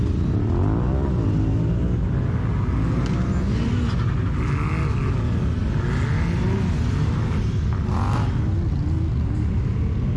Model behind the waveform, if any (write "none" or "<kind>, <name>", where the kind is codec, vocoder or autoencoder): none